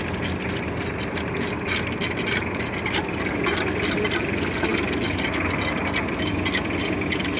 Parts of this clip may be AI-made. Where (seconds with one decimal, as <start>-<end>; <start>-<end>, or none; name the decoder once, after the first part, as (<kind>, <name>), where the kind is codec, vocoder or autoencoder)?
none